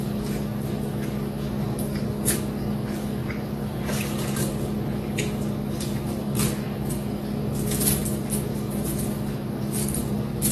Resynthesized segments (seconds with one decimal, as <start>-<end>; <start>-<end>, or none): 0.0-10.5